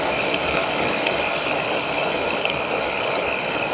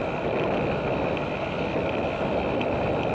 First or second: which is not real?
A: first